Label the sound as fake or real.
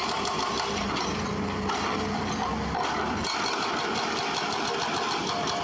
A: real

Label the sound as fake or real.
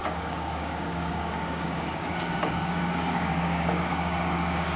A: fake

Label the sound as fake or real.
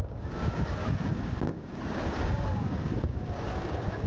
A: fake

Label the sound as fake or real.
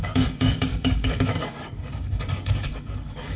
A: fake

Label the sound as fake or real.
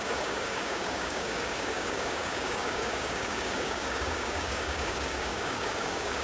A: fake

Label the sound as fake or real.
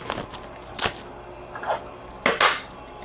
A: real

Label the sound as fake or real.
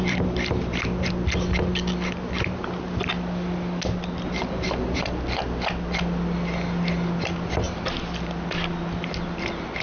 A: real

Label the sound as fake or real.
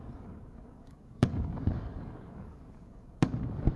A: fake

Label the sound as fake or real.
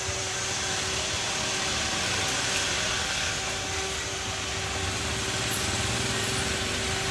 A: real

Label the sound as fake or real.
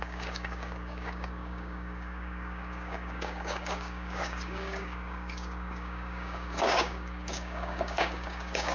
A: fake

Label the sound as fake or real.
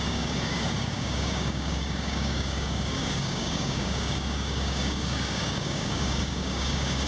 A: fake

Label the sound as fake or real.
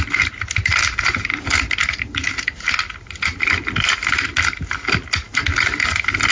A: real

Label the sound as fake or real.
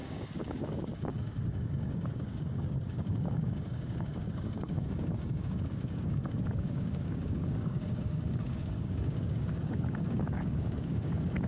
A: fake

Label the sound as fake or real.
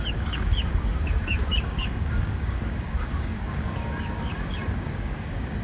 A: fake